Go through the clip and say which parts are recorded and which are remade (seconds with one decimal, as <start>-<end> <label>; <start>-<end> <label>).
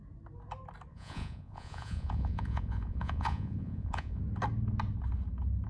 0.0-0.9 recorded; 0.9-4.2 remade; 4.2-5.7 recorded